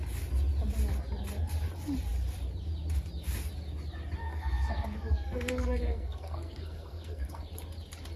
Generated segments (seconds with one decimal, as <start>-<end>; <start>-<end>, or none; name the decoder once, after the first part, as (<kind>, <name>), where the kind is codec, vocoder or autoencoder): 4.2-7.5 (codec, SNAC)